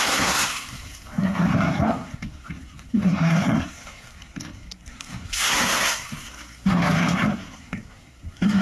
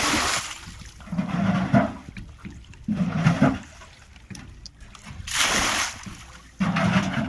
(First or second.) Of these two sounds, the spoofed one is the first